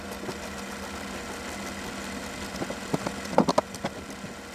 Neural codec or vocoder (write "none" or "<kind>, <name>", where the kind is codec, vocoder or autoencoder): none